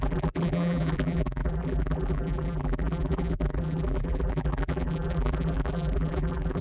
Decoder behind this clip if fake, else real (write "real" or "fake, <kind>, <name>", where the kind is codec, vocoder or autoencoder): fake, vocoder, BigVGAN v2